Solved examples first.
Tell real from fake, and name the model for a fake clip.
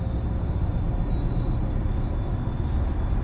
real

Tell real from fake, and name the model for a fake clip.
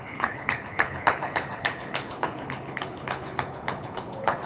fake, codec, HILCodec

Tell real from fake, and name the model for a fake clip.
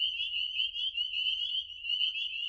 real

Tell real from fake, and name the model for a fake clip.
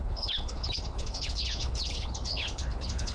fake, codec, HILCodec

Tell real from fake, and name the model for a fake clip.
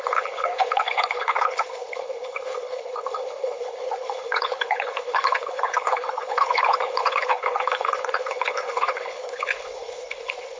fake, codec, HILCodec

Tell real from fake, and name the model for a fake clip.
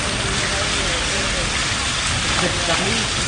real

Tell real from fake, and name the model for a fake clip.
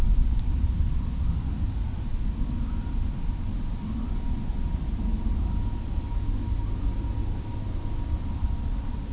real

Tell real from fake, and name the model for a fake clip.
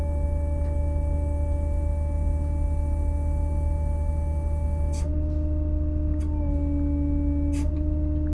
real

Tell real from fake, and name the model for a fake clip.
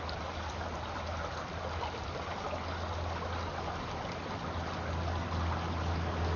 real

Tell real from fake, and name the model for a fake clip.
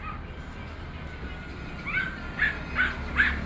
real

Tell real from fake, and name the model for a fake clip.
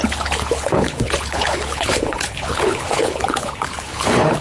fake, codec, HILCodec